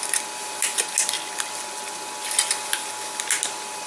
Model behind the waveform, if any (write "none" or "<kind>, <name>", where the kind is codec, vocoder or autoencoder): none